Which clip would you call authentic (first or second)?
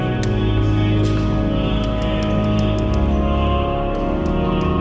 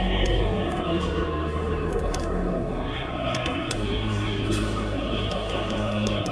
first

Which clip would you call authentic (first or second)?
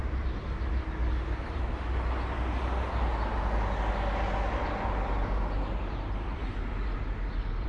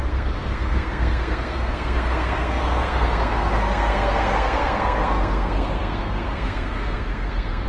first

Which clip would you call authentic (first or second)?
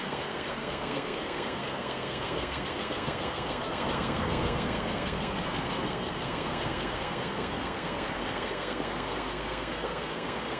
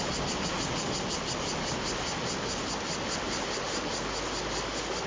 second